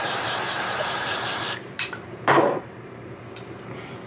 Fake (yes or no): yes